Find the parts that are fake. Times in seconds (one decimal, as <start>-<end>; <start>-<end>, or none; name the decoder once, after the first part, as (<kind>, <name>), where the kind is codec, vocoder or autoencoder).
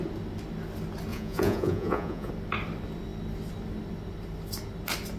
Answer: 1.1-2.3 (vocoder, Vocos)